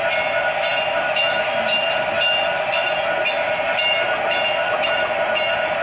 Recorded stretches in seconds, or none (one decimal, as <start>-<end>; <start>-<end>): 0.0-5.8